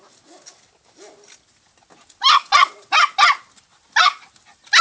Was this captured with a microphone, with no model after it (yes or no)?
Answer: yes